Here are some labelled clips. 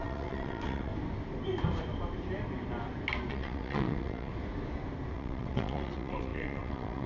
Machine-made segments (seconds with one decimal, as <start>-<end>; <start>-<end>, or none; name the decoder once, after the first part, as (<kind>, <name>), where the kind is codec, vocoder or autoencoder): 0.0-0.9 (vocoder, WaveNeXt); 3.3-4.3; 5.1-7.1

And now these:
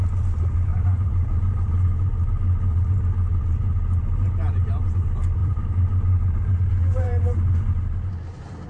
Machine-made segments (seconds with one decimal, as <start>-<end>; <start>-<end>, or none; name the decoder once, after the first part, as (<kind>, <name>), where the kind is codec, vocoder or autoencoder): 0.7-4.9 (vocoder, BigVGAN v2); 5.4-7.7

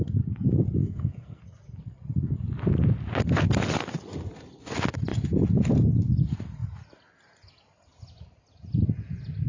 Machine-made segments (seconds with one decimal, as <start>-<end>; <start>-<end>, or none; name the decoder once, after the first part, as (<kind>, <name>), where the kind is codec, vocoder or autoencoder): 0.8-1.4 (codec, SNAC)

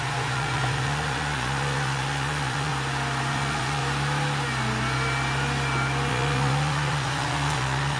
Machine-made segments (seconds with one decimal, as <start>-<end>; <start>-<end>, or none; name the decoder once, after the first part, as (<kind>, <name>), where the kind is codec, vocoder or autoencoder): 0.0-2.7 (vocoder, Vocos); 3.3-3.8; 6.1-8.0